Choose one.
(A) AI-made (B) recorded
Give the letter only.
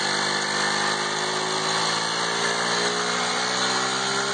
B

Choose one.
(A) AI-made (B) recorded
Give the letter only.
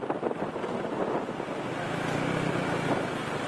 B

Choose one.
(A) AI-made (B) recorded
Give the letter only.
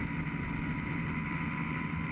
B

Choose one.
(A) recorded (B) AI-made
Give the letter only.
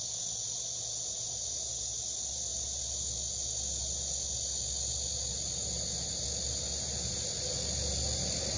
A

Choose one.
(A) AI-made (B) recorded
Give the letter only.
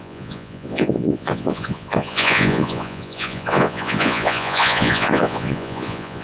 A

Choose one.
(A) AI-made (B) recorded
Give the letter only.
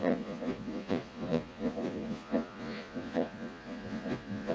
A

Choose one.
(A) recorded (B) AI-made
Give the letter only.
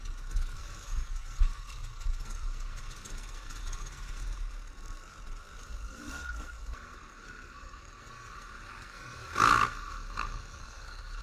B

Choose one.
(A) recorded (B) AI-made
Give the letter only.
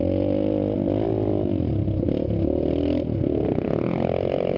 A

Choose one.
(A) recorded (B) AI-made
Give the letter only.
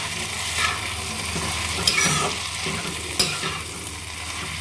A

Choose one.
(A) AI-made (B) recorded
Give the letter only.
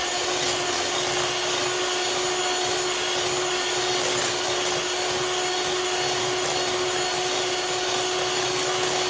B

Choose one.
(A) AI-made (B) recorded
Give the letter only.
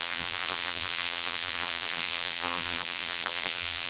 A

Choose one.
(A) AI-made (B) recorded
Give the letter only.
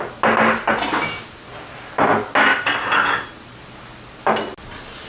B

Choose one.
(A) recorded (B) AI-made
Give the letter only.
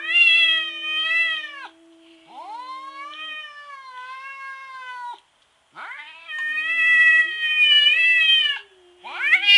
A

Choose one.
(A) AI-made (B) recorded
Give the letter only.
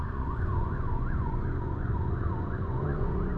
A